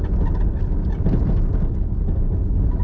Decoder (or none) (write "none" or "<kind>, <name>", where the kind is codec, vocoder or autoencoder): none